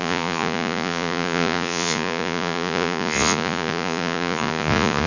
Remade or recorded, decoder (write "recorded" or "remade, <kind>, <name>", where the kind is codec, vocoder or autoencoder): remade, vocoder, Vocos